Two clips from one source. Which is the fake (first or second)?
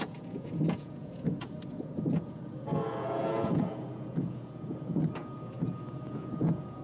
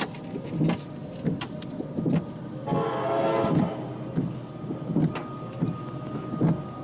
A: first